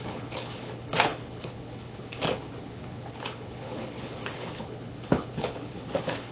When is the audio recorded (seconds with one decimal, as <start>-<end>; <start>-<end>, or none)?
none